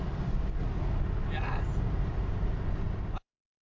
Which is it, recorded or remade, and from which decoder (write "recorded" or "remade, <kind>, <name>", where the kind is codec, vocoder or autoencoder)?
recorded